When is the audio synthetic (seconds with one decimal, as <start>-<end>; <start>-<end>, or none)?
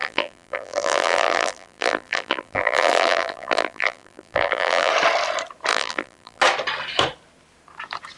0.0-4.9; 5.7-6.4